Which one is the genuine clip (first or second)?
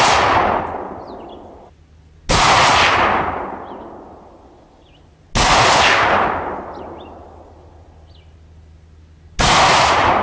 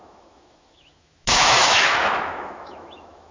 first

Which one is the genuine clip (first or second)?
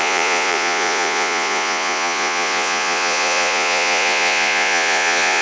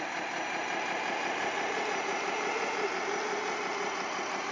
second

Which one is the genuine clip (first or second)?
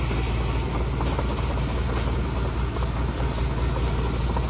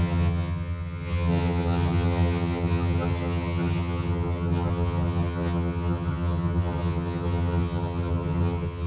first